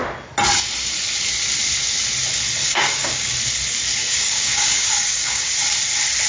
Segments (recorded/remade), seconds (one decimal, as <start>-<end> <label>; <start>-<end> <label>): 0.0-2.6 recorded; 2.6-3.4 remade; 3.4-4.0 recorded; 4.0-5.5 remade; 5.5-6.3 recorded